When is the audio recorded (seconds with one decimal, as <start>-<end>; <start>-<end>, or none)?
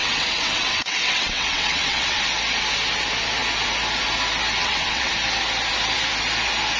2.2-4.6; 5.1-6.8